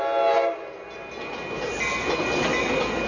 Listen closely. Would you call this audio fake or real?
real